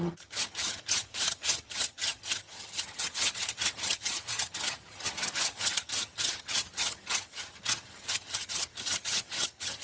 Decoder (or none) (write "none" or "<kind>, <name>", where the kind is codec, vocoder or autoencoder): vocoder, HiFi-GAN